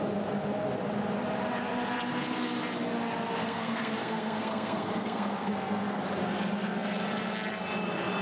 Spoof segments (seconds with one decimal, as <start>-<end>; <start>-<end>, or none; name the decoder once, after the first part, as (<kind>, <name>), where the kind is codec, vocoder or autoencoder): 3.4-6.0 (codec, SNAC)